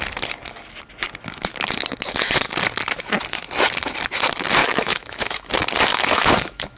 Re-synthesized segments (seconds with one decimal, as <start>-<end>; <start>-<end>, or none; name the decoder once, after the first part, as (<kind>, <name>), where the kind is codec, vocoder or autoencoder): 4.6-5.5 (autoencoder, DAC-VAE); 5.9-6.8